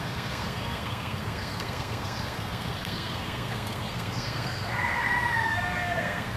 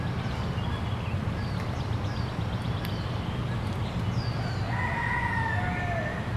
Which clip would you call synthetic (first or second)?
first